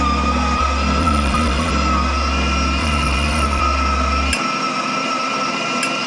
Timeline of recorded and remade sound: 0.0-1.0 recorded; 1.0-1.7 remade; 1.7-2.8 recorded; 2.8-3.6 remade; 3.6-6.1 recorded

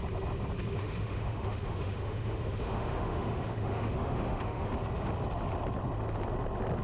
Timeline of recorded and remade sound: 0.0-0.8 recorded; 0.8-4.7 remade; 4.7-6.8 recorded